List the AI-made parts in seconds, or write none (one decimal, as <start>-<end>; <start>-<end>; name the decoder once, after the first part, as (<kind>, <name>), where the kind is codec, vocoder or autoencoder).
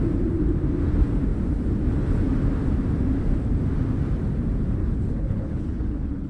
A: 4.8-6.3 (codec, HILCodec)